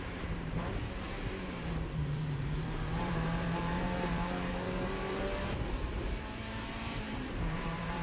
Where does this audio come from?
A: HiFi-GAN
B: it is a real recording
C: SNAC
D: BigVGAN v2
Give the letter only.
D